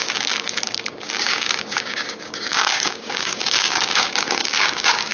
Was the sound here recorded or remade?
remade